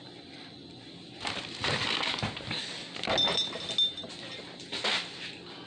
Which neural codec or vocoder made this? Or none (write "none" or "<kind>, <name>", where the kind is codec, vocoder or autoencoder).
none